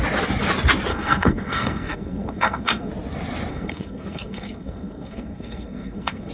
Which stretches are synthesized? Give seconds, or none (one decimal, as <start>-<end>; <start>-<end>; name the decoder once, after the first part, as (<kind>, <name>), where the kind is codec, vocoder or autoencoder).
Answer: 0.9-2.9 (codec, SNAC); 3.5-6.3